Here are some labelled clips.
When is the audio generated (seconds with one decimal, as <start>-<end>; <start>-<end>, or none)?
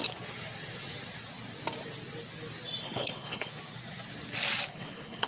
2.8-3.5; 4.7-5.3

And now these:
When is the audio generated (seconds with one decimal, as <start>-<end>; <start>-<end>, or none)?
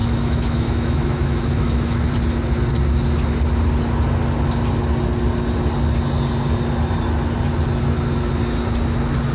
0.0-2.1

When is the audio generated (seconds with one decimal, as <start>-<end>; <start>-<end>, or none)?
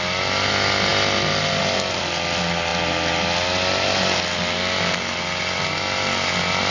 none